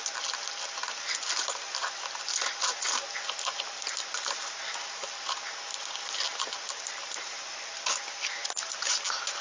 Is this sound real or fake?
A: real